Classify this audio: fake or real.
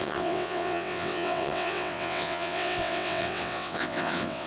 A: fake